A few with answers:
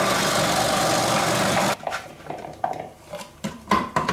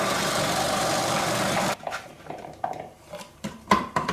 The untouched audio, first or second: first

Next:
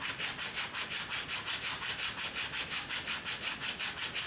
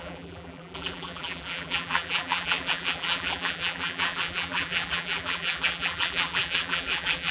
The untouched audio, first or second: first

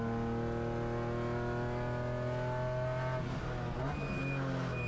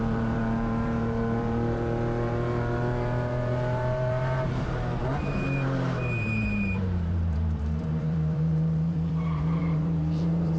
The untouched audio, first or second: first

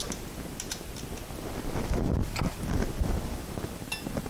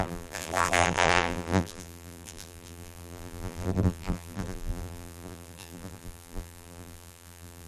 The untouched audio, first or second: first